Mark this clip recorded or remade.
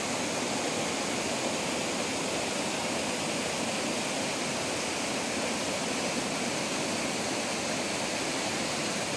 recorded